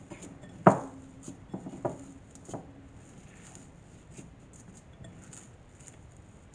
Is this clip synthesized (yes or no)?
no